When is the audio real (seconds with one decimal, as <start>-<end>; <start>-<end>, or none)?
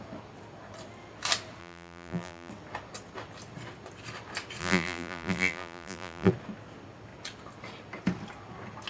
0.0-1.6; 2.5-4.6; 6.3-8.9